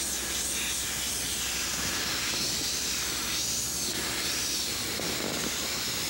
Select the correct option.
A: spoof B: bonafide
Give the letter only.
B